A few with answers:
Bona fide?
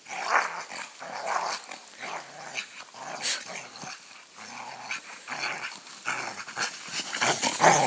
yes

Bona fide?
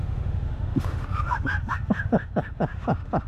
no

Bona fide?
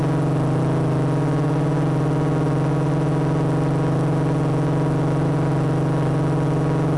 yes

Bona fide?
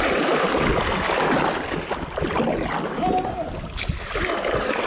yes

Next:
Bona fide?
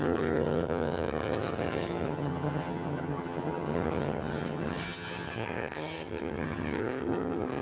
no